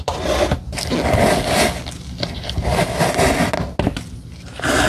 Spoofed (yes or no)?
no